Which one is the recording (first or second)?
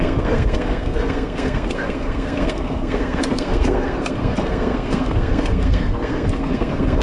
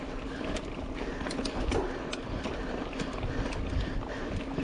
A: second